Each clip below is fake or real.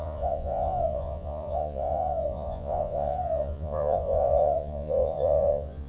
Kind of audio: fake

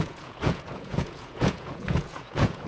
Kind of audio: fake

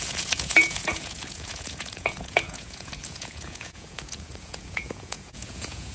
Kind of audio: fake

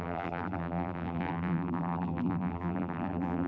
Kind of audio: fake